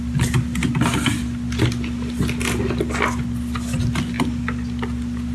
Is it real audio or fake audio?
real